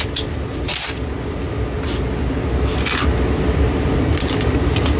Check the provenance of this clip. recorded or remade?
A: recorded